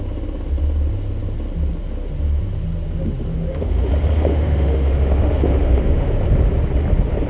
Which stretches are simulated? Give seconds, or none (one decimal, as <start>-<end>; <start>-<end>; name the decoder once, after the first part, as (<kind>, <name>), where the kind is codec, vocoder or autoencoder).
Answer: 3.3-3.9 (autoencoder, DAC-VAE); 4.3-6.1